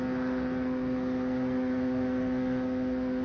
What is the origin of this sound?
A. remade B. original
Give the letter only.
A